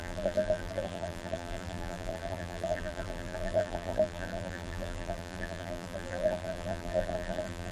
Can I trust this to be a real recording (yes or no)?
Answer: no